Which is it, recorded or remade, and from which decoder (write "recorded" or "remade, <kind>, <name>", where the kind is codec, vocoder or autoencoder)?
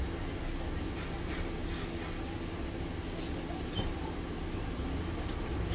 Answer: recorded